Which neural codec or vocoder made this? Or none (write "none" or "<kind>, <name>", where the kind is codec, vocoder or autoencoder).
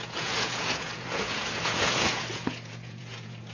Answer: vocoder, Vocos